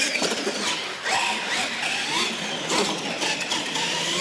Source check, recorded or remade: recorded